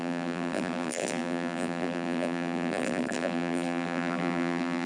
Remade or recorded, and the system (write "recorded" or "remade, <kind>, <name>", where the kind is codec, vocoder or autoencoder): remade, vocoder, BigVGAN v2